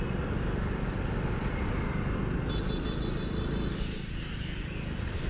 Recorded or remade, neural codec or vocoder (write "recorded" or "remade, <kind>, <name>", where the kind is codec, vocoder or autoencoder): recorded